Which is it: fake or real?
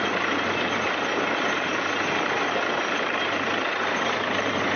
fake